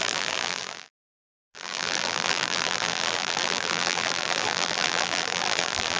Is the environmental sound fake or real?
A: fake